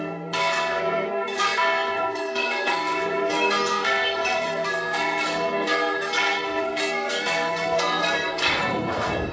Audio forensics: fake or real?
fake